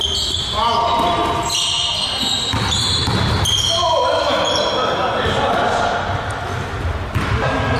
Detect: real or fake real